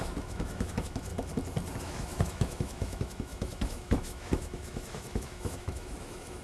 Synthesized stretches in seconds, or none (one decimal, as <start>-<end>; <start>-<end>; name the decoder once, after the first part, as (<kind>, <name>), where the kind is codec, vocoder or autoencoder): 0.0-1.1 (autoencoder, DAC-VAE); 1.8-6.4